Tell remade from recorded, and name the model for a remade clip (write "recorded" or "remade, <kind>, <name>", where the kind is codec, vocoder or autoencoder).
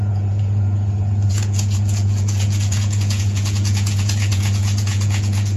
remade, vocoder, Vocos